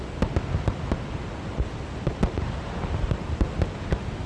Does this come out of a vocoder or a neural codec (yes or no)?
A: no